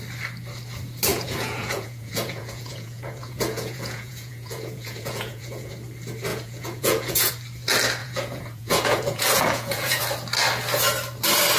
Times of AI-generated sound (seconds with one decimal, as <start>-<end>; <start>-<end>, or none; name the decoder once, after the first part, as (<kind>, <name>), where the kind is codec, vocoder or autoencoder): 1.1-5.7 (vocoder, Vocos); 6.3-7.3; 8.0-10.0